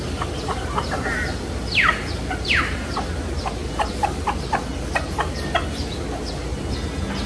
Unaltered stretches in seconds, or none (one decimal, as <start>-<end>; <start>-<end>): 0.0-7.3